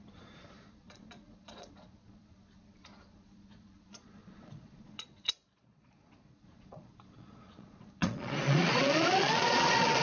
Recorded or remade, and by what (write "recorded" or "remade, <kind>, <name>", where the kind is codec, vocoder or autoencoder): remade, vocoder, Vocos